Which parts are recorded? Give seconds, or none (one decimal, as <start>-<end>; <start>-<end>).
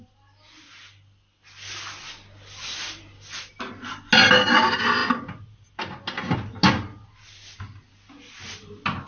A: 0.0-9.1